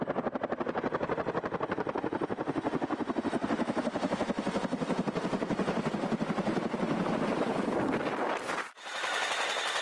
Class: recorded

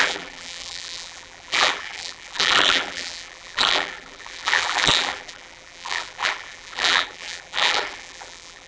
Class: remade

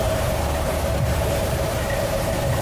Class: remade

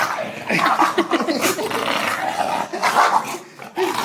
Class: recorded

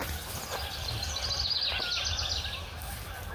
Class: recorded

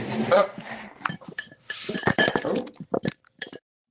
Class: remade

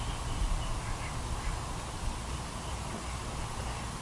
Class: recorded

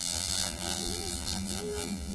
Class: remade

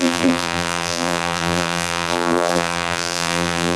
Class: remade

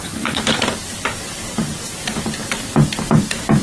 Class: remade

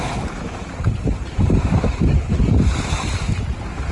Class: remade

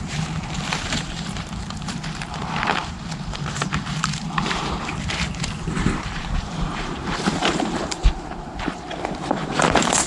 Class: remade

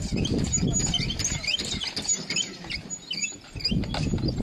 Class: recorded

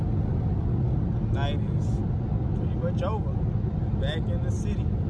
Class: recorded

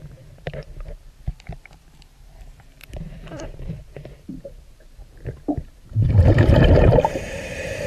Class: remade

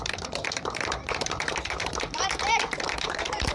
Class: remade